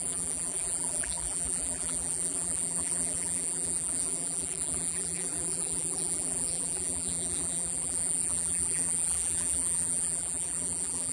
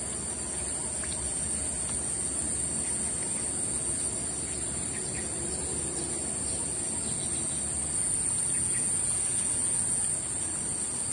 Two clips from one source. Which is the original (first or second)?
second